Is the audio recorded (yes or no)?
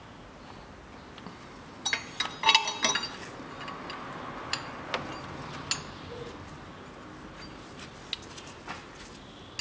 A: yes